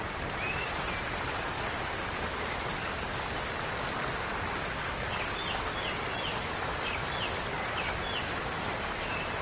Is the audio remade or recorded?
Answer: recorded